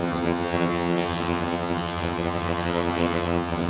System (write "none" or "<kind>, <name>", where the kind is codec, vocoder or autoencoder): vocoder, HiFi-GAN